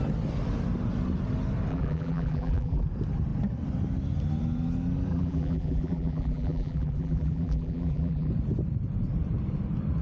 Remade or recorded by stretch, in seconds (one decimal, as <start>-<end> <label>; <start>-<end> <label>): 0.0-1.7 recorded; 1.7-2.8 remade; 2.8-5.1 recorded; 5.1-8.3 remade; 8.3-10.0 recorded